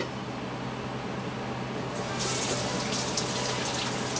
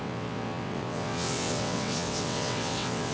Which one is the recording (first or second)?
first